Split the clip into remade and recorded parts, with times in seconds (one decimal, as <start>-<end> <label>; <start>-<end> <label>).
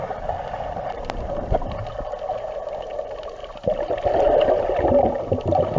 0.0-5.8 recorded